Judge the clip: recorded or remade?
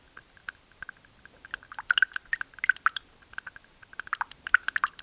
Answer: recorded